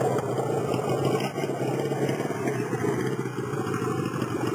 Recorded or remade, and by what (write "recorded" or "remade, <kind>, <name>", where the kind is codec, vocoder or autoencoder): recorded